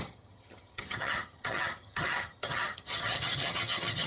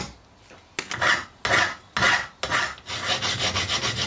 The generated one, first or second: first